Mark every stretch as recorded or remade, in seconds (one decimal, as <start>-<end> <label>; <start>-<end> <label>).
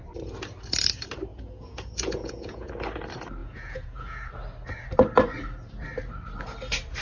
0.0-1.3 recorded; 1.3-2.7 remade; 2.7-3.4 recorded; 3.4-4.3 remade; 4.3-7.0 recorded